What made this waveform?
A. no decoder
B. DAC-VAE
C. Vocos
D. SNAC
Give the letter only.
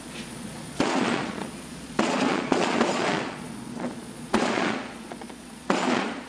C